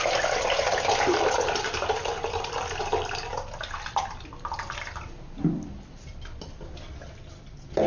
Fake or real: fake